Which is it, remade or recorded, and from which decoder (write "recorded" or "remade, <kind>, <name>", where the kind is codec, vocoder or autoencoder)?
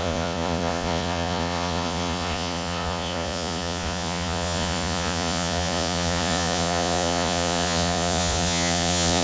remade, vocoder, Vocos